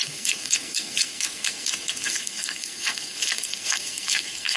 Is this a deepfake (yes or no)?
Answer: yes